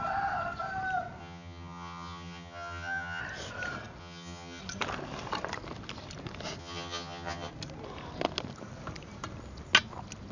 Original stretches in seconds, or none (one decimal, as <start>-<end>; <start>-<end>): 0.0-1.2; 3.2-4.0; 4.6-6.6; 7.5-10.3